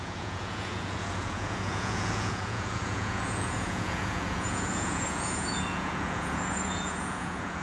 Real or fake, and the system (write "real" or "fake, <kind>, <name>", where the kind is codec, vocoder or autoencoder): fake, vocoder, Vocos